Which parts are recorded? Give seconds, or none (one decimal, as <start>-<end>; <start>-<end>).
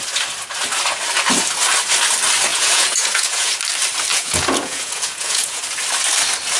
0.0-2.5; 3.5-4.1; 5.6-6.6